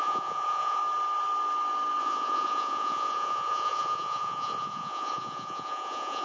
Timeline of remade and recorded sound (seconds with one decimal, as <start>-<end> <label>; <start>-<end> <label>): 0.0-0.8 remade; 0.8-2.0 recorded; 2.0-6.2 remade